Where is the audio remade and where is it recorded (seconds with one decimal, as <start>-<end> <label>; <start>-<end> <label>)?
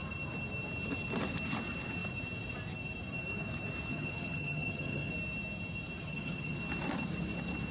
0.0-3.9 recorded; 3.9-5.1 remade; 5.1-6.0 recorded; 6.0-6.6 remade; 6.6-7.7 recorded